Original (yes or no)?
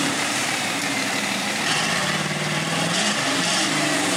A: no